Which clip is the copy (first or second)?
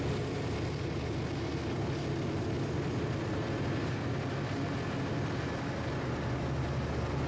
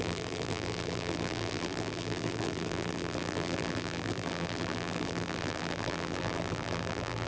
second